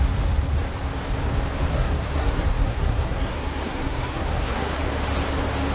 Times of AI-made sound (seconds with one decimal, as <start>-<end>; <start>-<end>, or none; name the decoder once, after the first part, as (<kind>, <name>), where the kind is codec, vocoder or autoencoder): 1.7-4.8 (codec, SNAC)